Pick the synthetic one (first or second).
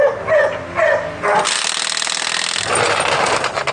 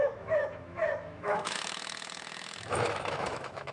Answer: second